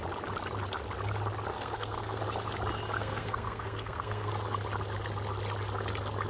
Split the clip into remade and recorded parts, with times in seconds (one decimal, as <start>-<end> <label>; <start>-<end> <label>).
0.0-1.5 recorded; 1.5-2.2 remade; 2.2-3.0 recorded; 3.0-4.3 remade; 4.3-6.3 recorded